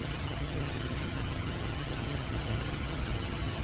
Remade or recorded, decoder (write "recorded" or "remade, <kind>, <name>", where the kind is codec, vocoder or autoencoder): remade, vocoder, HiFi-GAN